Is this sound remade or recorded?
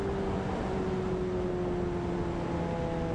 recorded